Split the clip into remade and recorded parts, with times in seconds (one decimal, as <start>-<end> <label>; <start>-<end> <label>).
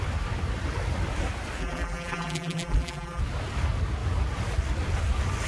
0.0-1.6 recorded; 1.6-3.2 remade; 3.2-5.5 recorded